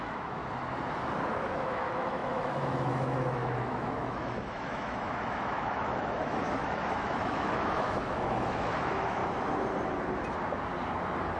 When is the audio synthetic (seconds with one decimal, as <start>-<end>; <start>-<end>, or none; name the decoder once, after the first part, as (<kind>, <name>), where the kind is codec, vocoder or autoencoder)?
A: 0.0-0.4 (autoencoder, DAC-VAE); 1.3-9.2